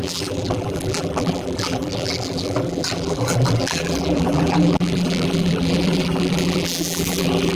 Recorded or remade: remade